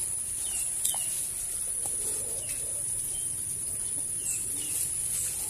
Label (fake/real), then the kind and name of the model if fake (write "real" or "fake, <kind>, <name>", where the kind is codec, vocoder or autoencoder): real